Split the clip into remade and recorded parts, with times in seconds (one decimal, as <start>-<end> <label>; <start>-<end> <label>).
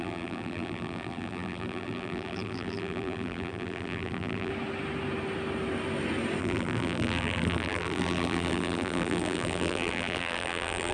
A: 0.0-4.5 remade; 4.5-6.4 recorded; 6.4-10.9 remade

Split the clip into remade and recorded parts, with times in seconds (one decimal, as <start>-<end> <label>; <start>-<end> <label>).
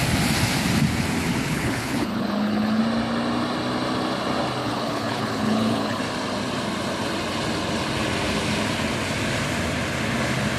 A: 0.0-1.3 recorded; 1.3-2.8 remade; 2.8-4.6 recorded; 4.6-6.0 remade; 6.0-10.6 recorded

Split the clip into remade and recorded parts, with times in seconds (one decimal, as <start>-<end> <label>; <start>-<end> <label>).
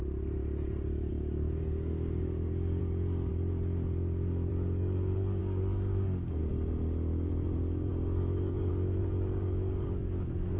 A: 0.0-1.1 recorded; 1.1-2.8 remade; 2.8-5.4 recorded; 5.4-6.4 remade; 6.4-7.9 recorded; 7.9-8.7 remade; 8.7-10.6 recorded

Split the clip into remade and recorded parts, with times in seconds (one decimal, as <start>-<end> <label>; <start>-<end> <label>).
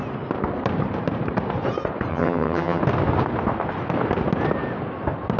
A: 0.0-2.1 recorded; 2.1-2.8 remade; 2.8-5.4 recorded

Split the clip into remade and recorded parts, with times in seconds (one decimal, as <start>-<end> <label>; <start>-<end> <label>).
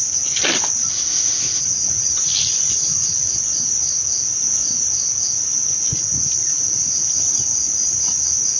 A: 0.0-0.9 recorded; 0.9-1.6 remade; 1.6-8.6 recorded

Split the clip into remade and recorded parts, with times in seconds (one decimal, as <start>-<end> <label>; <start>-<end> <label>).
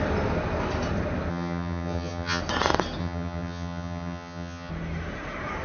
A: 0.0-1.3 recorded; 1.3-2.4 remade; 2.4-3.0 recorded; 3.0-4.7 remade; 4.7-5.6 recorded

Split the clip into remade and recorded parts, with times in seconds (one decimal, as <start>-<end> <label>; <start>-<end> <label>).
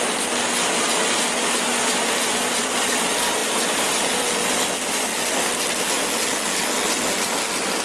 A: 0.0-7.8 recorded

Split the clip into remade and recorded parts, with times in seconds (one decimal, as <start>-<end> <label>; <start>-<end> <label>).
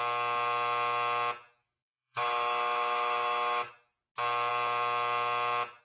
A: 0.0-1.6 recorded; 1.6-3.7 remade; 3.7-5.8 recorded